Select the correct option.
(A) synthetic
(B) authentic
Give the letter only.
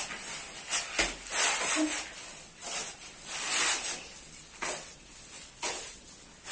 B